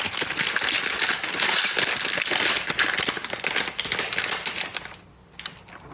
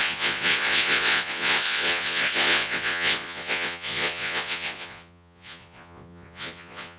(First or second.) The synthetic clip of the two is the second